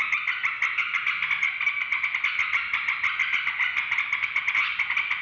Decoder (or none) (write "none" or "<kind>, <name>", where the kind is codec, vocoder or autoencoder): none